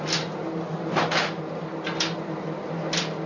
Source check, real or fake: real